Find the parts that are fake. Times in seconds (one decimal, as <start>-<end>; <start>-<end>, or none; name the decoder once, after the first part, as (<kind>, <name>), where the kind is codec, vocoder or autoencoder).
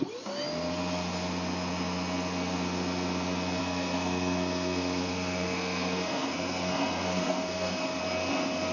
3.6-8.0 (codec, SNAC)